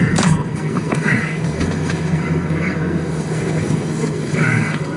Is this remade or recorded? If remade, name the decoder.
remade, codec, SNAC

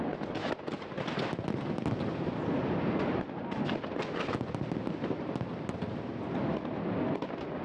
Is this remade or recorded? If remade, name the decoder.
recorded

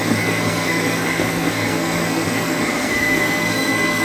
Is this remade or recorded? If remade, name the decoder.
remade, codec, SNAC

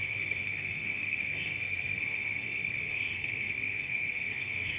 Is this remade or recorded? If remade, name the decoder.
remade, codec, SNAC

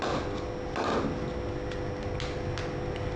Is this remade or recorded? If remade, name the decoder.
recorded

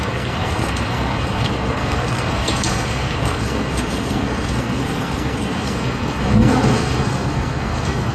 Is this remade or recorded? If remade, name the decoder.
remade, codec, SNAC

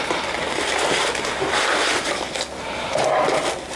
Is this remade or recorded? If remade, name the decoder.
recorded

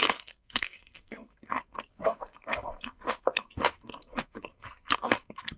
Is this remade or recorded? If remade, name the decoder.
remade, codec, SNAC